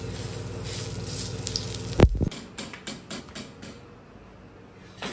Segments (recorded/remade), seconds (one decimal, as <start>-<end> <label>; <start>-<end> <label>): 0.0-5.1 recorded